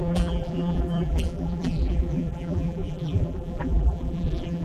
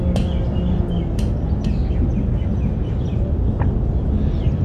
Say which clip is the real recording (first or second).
second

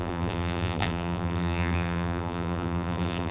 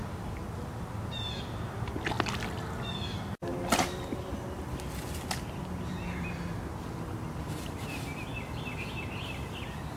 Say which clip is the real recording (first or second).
second